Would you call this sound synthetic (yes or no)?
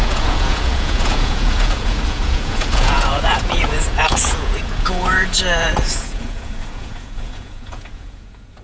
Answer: yes